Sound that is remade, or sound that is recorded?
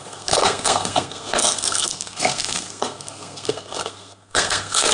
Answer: remade